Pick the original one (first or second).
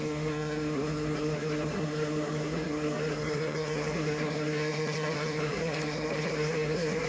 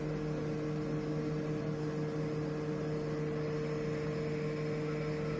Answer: second